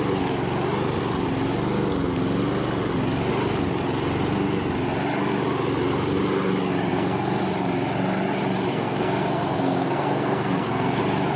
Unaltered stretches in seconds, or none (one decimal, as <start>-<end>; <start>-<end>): 0.0-6.9; 7.4-8.7; 11.0-11.4